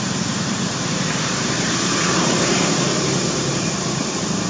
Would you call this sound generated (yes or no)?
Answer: yes